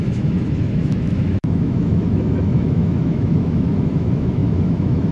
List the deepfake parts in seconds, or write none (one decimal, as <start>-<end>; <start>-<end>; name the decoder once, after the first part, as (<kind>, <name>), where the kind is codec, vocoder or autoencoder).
0.0-5.1 (autoencoder, DAC-VAE)